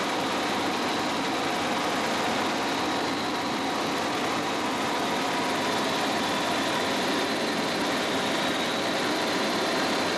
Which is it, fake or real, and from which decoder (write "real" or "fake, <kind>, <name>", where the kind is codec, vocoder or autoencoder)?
real